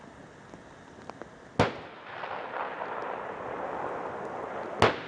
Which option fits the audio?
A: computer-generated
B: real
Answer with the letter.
B